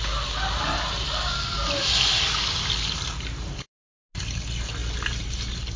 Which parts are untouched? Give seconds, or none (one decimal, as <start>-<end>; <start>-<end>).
0.0-5.8